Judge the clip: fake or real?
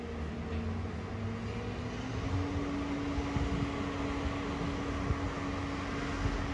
real